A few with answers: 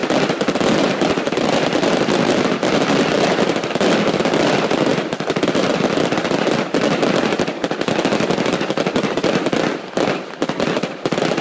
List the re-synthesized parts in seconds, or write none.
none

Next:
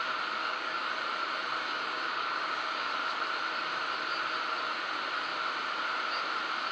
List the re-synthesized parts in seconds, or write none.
0.4-0.9 (codec, DAC); 1.7-2.9

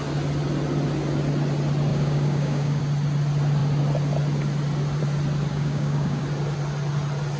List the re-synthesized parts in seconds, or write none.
1.9-2.8 (codec, DAC); 5.5-6.2